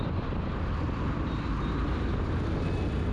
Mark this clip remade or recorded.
recorded